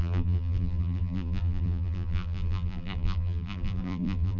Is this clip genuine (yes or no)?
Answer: no